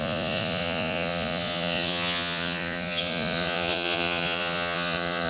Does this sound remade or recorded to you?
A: remade